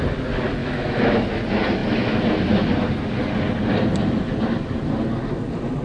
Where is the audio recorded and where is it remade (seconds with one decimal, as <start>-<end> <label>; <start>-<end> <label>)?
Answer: 0.0-0.6 recorded; 0.6-1.2 remade; 1.2-5.8 recorded